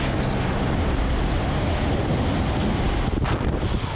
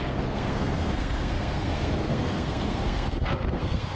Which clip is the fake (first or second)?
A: second